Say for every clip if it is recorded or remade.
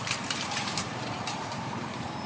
remade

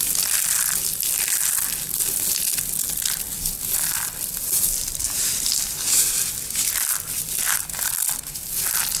recorded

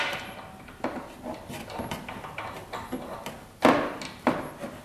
recorded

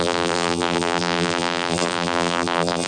remade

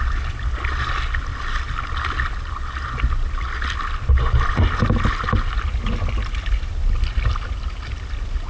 recorded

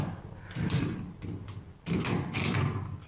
remade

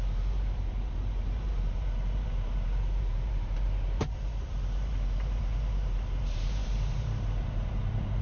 remade